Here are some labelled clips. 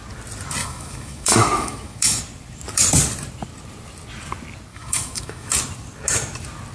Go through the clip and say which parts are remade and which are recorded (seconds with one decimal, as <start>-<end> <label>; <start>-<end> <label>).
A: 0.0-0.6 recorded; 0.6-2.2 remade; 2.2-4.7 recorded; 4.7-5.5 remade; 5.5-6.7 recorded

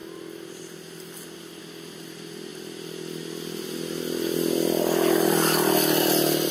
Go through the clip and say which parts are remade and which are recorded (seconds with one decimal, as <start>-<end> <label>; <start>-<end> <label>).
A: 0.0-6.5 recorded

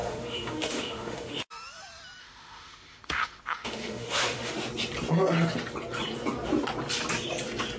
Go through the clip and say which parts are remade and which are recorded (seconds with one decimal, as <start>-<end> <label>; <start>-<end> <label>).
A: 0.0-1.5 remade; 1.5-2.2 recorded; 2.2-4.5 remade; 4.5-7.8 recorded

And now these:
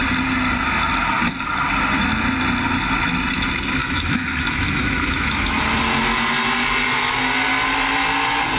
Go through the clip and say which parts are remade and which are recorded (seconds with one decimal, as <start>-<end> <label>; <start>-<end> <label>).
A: 0.0-3.8 recorded; 3.8-5.6 remade; 5.6-8.6 recorded